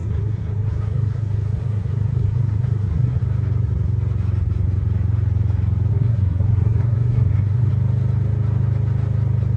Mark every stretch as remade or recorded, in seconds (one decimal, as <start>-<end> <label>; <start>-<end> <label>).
0.0-3.2 remade; 3.2-5.9 recorded; 5.9-7.7 remade; 7.7-9.6 recorded